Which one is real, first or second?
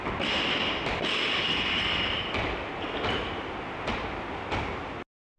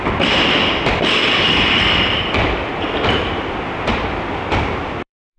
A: first